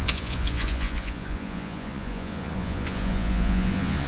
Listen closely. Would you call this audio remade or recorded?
remade